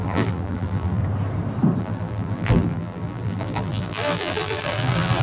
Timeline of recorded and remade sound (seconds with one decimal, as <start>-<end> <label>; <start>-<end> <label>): 0.0-1.0 remade; 1.0-1.8 recorded; 1.8-5.2 remade